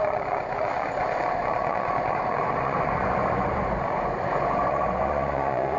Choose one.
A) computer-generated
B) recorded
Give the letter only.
A